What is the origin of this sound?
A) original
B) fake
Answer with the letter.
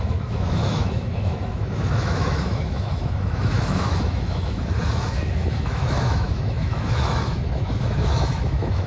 B